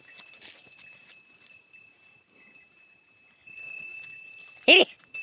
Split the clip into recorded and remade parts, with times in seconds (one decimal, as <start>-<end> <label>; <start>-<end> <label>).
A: 0.0-5.2 recorded